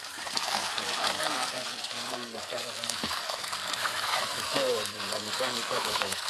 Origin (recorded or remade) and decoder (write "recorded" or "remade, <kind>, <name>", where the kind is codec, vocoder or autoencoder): remade, codec, SNAC